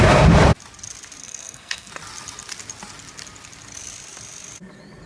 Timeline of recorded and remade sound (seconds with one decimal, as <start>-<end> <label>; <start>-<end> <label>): 0.0-1.2 recorded; 1.2-1.9 remade; 1.9-5.1 recorded